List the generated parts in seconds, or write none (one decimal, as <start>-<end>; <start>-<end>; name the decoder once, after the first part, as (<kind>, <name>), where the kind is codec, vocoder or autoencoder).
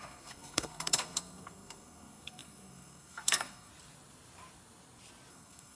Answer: 0.0-3.7 (codec, SNAC); 5.3-5.8